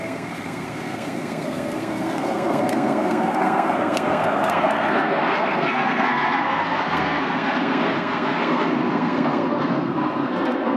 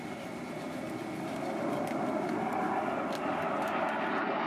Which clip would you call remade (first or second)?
first